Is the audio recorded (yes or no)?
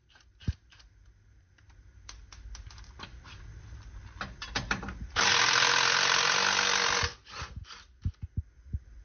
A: yes